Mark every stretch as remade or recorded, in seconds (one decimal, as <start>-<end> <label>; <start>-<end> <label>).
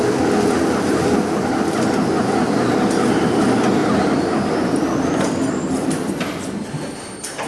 0.0-3.8 recorded; 3.8-5.1 remade; 5.1-7.5 recorded